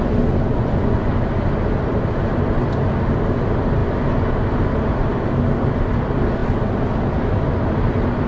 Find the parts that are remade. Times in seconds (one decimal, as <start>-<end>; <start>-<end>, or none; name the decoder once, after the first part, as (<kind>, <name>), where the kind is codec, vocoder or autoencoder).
0.5-1.1 (vocoder, Vocos)